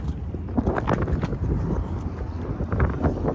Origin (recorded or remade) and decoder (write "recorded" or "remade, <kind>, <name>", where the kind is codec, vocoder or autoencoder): recorded